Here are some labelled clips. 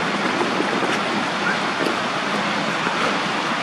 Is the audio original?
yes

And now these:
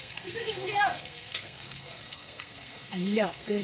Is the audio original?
no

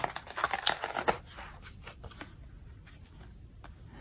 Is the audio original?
yes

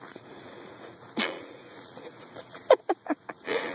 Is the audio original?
no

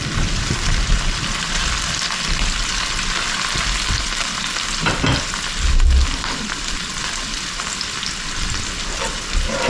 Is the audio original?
yes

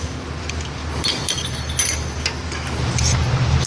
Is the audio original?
yes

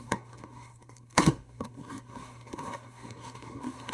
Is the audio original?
no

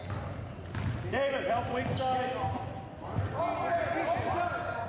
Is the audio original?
yes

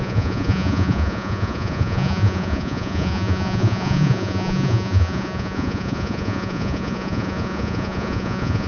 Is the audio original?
no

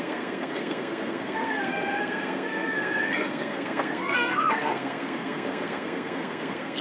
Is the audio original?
no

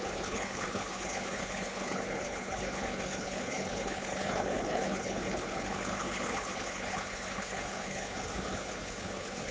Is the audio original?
no